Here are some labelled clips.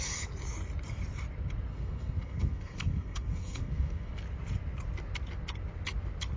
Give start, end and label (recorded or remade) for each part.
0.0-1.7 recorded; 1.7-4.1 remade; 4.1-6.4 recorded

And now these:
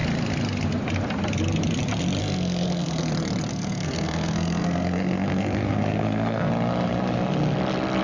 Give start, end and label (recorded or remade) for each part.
0.0-2.2 recorded; 2.2-3.1 remade; 3.1-3.5 recorded; 3.5-6.5 remade; 6.5-8.0 recorded

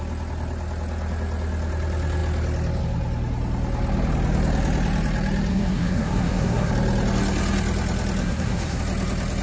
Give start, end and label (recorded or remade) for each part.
0.0-5.5 recorded; 5.5-6.7 remade; 6.7-8.2 recorded; 8.2-8.8 remade; 8.8-9.4 recorded

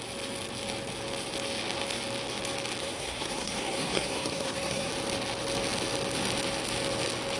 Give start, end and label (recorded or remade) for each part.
0.0-2.8 recorded; 2.8-4.9 remade; 4.9-7.4 recorded

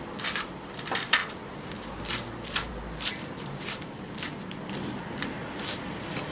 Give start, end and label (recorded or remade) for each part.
0.0-6.3 recorded

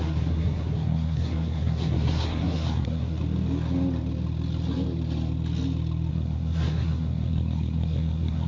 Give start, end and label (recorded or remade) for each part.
0.0-3.2 remade; 3.2-6.1 recorded; 6.1-8.5 remade